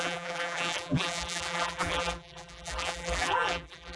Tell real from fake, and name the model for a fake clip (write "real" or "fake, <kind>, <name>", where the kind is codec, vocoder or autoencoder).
fake, vocoder, BigVGAN v2